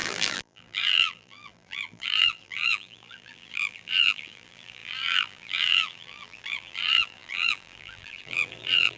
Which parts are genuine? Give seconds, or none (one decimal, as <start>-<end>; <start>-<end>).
none

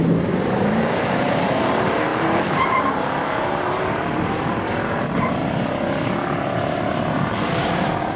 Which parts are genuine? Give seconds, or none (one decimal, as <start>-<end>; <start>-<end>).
5.4-7.3

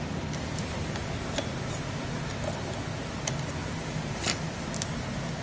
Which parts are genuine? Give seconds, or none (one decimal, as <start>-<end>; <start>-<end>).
0.0-3.6; 4.6-5.4

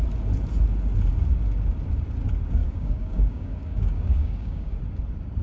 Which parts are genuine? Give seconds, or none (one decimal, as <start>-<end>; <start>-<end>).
0.0-2.6; 4.8-5.4